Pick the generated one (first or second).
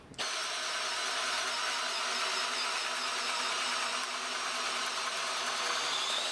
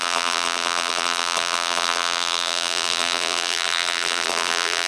second